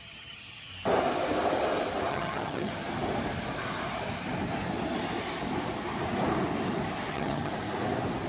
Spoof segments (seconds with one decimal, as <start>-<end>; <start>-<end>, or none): 0.0-0.7; 2.1-2.7; 7.1-7.5